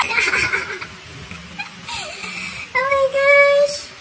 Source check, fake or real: real